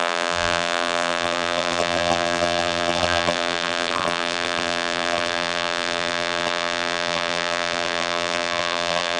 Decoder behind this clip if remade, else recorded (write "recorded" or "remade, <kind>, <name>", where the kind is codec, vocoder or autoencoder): remade, vocoder, BigVGAN v2